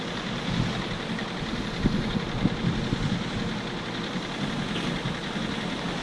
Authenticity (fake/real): real